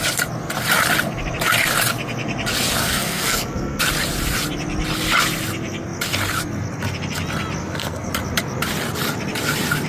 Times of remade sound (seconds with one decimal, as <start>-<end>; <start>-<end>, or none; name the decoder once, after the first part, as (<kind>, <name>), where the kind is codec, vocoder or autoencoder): 2.8-3.8 (codec, SNAC); 7.6-8.1